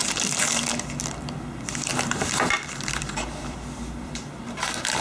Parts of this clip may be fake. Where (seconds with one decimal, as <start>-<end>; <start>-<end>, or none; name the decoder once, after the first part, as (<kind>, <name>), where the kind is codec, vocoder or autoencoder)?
1.0-5.0 (vocoder, BigVGAN v2)